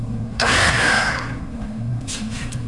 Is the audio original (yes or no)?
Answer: no